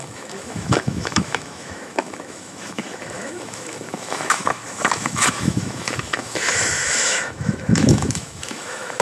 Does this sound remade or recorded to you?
remade